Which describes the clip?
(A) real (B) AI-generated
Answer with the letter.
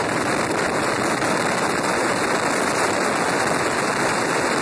A